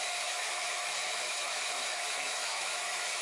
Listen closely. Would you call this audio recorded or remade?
remade